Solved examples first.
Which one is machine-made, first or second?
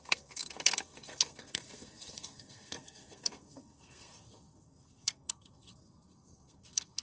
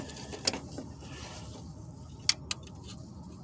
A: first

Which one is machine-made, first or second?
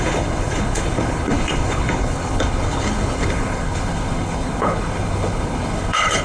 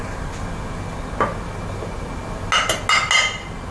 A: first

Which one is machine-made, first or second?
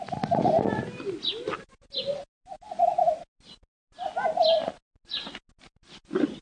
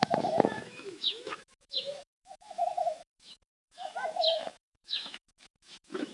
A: second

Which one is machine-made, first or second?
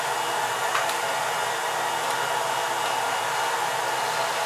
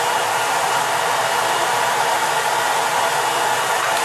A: second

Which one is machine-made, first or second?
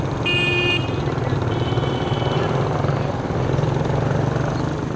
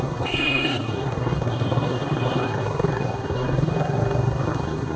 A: second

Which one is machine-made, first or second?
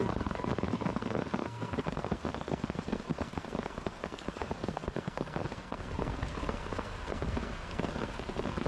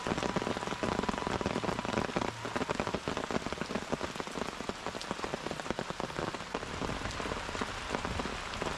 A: first